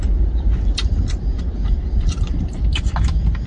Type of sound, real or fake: fake